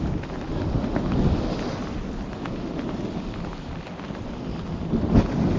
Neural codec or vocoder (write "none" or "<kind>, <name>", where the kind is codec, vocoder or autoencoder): none